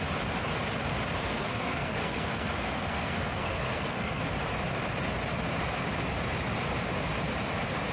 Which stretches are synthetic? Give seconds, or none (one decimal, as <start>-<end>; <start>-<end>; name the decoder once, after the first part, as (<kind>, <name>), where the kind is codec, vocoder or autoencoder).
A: 1.2-4.2 (codec, SNAC)